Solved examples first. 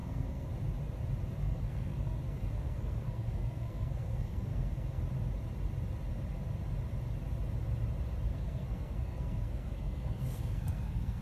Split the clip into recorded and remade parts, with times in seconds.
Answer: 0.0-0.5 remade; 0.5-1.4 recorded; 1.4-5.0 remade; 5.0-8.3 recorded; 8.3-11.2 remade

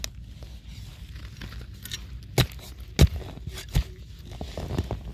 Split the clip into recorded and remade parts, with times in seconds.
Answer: 0.0-5.1 recorded

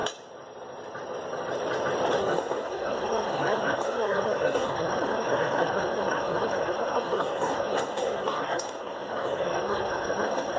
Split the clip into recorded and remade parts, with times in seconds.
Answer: 0.0-2.2 recorded; 2.2-10.6 remade

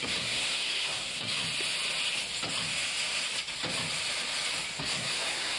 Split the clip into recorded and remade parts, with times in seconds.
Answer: 0.0-1.4 remade; 1.4-4.8 recorded; 4.8-5.6 remade

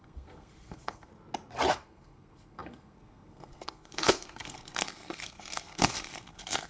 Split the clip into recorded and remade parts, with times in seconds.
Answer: 0.0-1.1 remade; 1.1-1.7 recorded; 1.7-6.7 remade

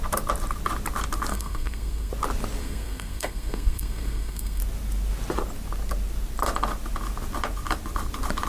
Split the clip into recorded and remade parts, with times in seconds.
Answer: 0.0-1.3 recorded; 1.3-2.1 remade; 2.1-2.6 recorded; 2.6-4.6 remade; 4.6-8.5 recorded

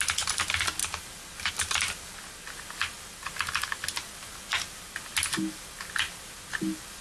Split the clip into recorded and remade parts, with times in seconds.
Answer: 0.0-7.0 recorded